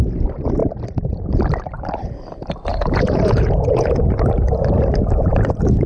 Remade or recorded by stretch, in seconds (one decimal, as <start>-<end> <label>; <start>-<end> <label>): 0.0-2.7 recorded; 2.7-4.0 remade; 4.0-5.9 recorded